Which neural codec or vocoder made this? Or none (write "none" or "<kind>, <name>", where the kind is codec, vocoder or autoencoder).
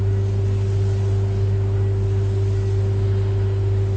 none